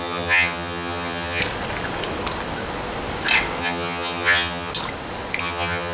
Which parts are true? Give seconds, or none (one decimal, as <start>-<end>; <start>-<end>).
1.4-3.6; 4.7-5.4